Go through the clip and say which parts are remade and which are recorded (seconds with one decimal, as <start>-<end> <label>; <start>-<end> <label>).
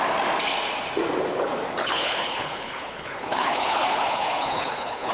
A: 0.0-1.8 recorded; 1.8-5.1 remade